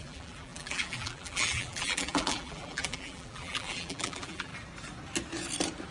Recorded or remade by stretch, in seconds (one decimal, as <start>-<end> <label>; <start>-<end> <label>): 0.0-4.5 remade; 4.5-5.9 recorded